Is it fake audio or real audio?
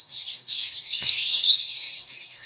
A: fake